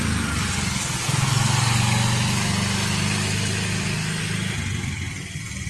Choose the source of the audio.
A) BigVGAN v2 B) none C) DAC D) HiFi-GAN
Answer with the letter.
B